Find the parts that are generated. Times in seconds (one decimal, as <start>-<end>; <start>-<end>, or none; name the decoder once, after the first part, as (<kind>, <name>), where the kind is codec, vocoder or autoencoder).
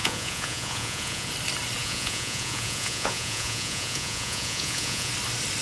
0.0-1.3 (vocoder, Vocos); 1.8-5.1